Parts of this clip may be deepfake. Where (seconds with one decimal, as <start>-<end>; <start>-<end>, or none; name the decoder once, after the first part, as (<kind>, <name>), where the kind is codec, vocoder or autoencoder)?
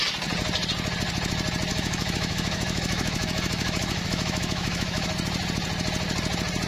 1.7-5.1 (autoencoder, DAC-VAE)